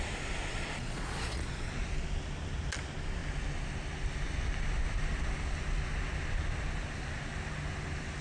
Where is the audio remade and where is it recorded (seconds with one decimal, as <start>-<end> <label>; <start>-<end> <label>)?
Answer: 0.0-0.5 recorded; 0.5-1.7 remade; 1.7-8.2 recorded